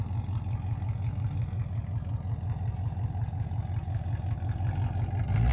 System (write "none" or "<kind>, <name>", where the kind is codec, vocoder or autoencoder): none